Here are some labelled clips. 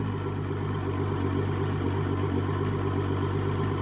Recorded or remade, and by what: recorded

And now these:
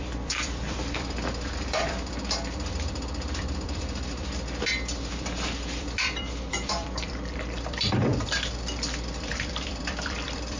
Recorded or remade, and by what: remade, vocoder, BigVGAN v2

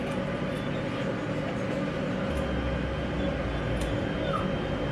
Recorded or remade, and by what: recorded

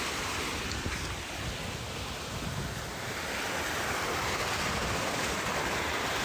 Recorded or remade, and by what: remade, vocoder, BigVGAN v2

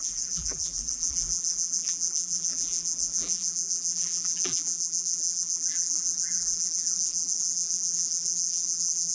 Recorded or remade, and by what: remade, vocoder, BigVGAN v2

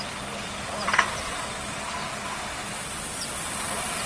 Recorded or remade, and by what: remade, vocoder, BigVGAN v2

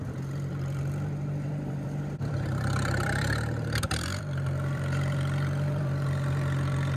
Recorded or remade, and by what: remade, vocoder, BigVGAN v2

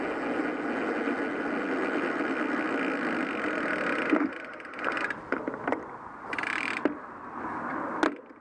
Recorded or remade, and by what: recorded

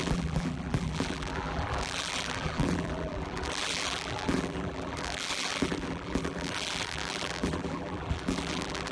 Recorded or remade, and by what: remade, vocoder, BigVGAN v2